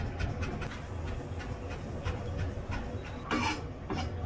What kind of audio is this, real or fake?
real